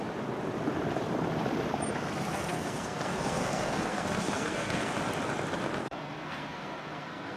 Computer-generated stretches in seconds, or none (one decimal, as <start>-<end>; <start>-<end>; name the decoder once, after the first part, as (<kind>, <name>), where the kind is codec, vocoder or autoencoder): 2.3-4.9 (codec, SNAC); 5.8-7.4